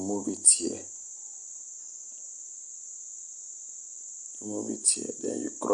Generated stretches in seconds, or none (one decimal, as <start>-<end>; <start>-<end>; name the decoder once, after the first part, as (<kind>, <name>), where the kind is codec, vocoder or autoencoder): none